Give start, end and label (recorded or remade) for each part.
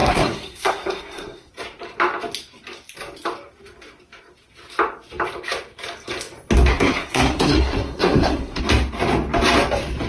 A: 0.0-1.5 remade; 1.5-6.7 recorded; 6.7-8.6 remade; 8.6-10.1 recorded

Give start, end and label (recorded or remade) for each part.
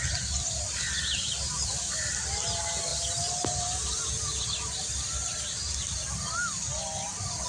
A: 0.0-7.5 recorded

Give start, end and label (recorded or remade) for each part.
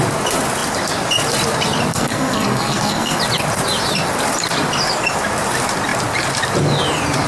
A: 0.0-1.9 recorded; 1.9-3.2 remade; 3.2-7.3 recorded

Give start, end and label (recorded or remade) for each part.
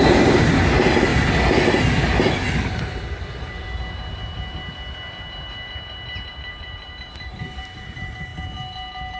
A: 0.0-1.1 remade; 1.1-6.3 recorded; 6.3-8.3 remade; 8.3-9.2 recorded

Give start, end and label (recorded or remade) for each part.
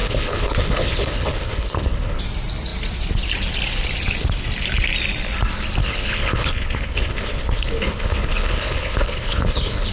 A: 0.0-2.2 remade; 2.2-5.8 recorded; 5.8-9.9 remade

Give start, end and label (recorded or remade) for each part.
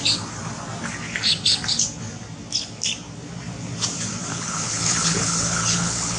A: 0.0-4.3 recorded; 4.3-6.2 remade